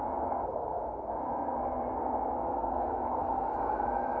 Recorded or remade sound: remade